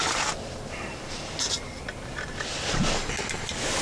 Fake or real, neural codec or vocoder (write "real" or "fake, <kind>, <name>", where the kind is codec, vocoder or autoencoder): real